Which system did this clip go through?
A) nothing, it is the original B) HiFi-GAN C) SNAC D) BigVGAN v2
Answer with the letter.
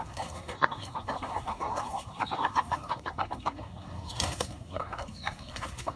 C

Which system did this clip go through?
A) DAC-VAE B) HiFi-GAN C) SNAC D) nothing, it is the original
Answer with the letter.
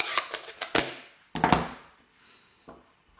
D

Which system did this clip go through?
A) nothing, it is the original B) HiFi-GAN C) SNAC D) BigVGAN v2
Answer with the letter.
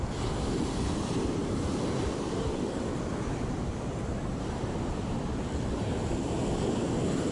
A